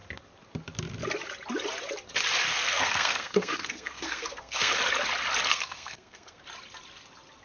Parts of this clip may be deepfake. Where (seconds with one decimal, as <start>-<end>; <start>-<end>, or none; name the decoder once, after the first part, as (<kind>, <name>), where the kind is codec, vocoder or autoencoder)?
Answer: 2.5-4.7 (codec, SNAC); 5.5-6.4